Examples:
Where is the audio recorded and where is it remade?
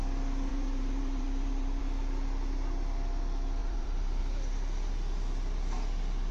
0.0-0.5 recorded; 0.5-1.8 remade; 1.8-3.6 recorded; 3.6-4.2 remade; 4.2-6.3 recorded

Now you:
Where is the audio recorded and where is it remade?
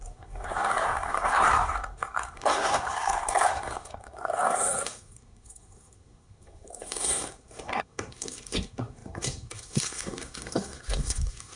0.0-11.6 remade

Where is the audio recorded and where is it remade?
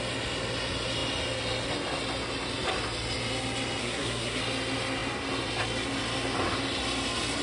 0.0-3.8 recorded; 3.8-4.4 remade; 4.4-7.4 recorded